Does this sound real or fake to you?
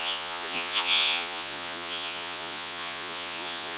fake